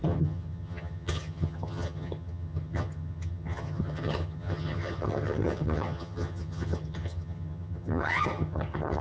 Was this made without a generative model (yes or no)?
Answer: no